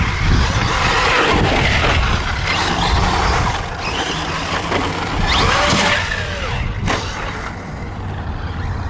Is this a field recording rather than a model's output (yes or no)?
yes